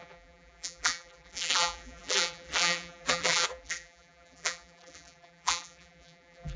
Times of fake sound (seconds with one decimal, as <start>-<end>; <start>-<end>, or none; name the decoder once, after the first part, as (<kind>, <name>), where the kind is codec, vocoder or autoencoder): 0.0-6.6 (vocoder, BigVGAN v2)